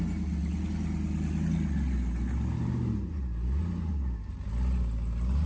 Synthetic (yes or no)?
no